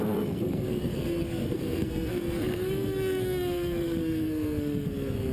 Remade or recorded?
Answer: remade